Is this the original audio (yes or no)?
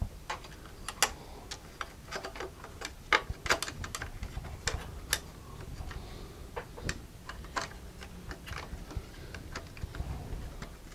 yes